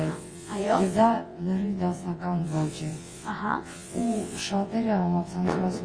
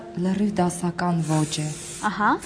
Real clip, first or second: second